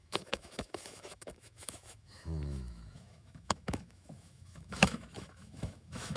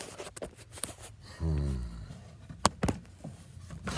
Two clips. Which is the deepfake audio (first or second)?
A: first